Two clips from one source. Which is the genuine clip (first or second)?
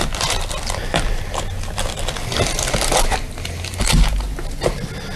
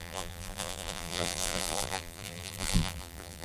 first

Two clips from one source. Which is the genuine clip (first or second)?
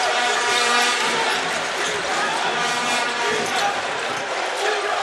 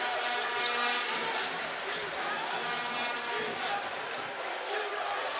second